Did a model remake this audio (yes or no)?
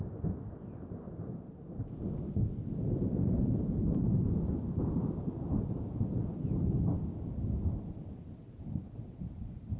yes